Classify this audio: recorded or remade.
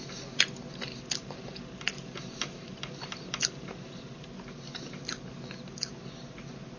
recorded